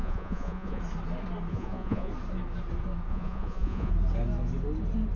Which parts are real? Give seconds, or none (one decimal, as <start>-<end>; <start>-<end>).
0.8-1.5; 2.1-3.1; 3.9-5.2